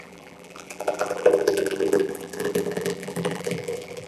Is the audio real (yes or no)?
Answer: no